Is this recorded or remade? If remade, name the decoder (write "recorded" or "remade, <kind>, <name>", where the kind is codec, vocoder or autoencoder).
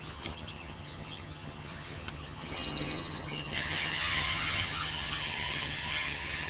remade, vocoder, HiFi-GAN